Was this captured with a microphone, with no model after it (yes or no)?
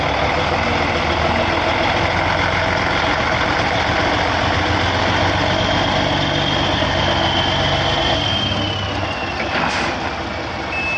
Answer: yes